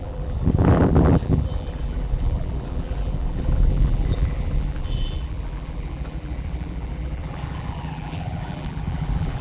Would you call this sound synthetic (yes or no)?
yes